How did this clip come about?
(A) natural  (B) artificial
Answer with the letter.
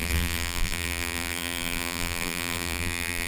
B